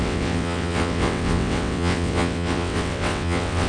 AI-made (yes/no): yes